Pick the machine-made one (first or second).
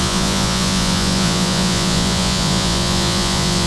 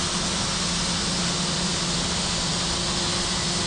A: first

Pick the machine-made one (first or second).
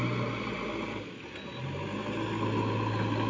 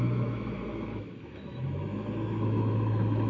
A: second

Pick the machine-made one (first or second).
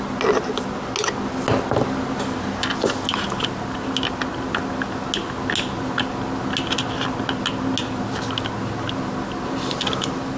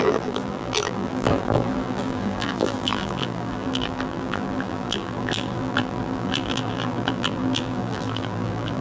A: second